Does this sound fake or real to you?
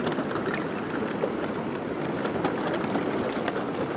real